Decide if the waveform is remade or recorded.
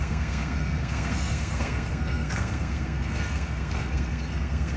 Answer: remade